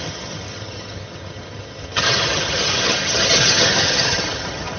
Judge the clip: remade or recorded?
remade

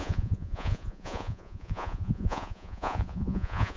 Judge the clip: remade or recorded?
remade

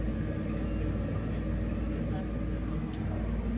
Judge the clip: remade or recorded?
recorded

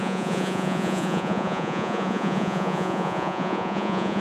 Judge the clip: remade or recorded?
remade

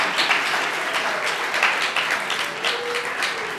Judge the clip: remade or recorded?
recorded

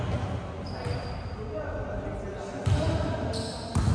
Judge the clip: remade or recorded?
recorded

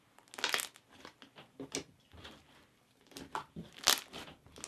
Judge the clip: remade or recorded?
recorded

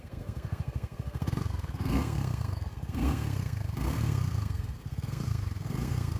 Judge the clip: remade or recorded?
remade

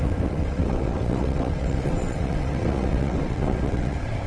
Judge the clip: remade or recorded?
remade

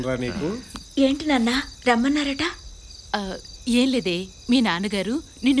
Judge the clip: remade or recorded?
recorded